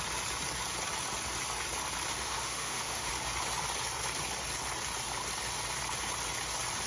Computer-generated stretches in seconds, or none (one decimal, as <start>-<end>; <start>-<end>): 2.1-3.1